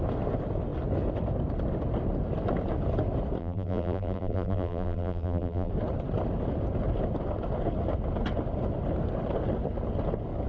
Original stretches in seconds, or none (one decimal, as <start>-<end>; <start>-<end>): 0.0-3.4; 5.7-10.5